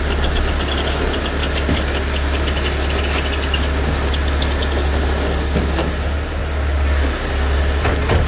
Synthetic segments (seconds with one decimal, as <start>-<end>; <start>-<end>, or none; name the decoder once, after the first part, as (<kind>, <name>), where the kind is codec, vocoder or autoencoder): none